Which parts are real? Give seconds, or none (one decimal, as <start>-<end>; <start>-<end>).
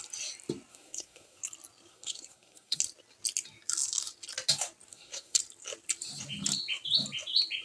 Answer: 0.0-0.7; 1.4-1.9; 2.8-4.9; 5.4-7.6